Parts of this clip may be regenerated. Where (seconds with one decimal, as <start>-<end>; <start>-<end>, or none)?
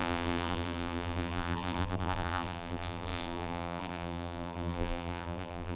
0.0-5.8